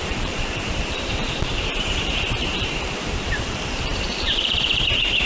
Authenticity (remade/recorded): remade